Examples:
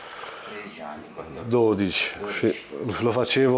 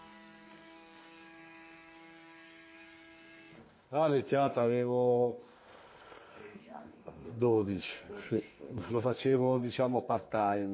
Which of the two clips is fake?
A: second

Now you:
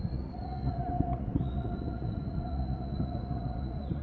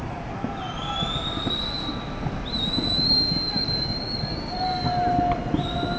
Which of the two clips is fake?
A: first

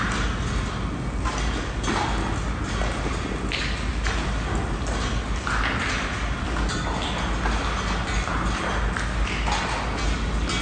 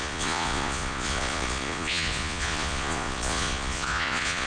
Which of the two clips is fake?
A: second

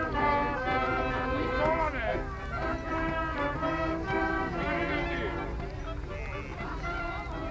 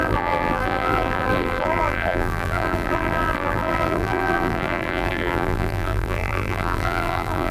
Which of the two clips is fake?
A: second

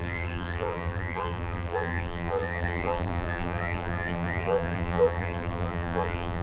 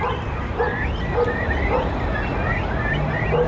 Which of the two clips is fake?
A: first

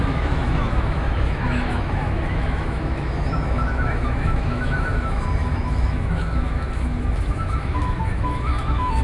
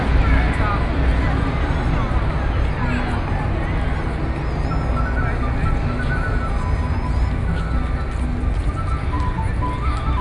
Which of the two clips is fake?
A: first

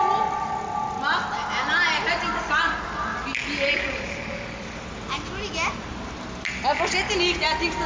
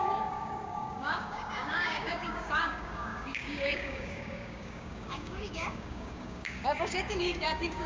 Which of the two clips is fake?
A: second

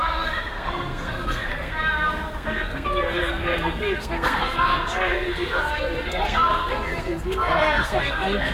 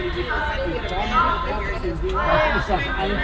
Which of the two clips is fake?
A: first